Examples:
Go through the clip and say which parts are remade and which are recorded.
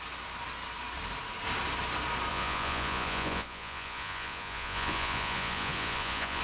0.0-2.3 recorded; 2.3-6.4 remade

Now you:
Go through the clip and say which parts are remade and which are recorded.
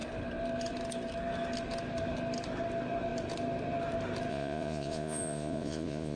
0.0-4.3 recorded; 4.3-6.2 remade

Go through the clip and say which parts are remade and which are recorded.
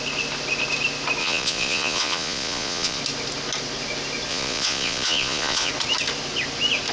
0.0-1.2 recorded; 1.2-3.0 remade; 3.0-4.3 recorded; 4.3-5.7 remade; 5.7-6.9 recorded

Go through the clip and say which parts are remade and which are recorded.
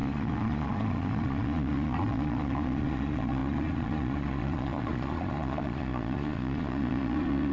0.0-7.5 remade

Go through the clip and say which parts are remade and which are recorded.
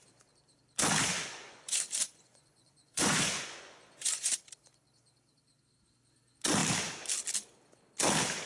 0.0-1.1 recorded; 1.1-4.4 remade; 4.4-8.5 recorded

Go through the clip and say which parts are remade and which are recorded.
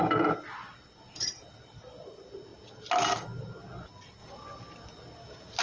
0.0-5.6 recorded